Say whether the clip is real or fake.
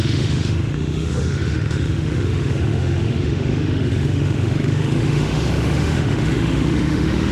fake